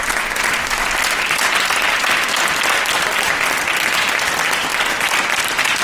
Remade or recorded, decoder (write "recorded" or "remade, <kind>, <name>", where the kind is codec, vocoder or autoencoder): recorded